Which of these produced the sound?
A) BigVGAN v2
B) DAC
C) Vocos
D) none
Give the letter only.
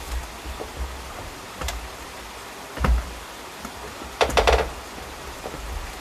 D